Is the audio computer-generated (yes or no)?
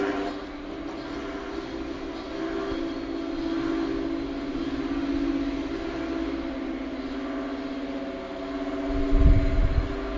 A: no